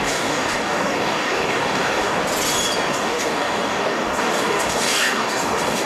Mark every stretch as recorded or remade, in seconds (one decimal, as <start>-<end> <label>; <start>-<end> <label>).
0.0-2.2 remade; 2.2-2.9 recorded; 2.9-5.9 remade